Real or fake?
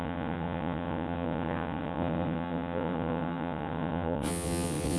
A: fake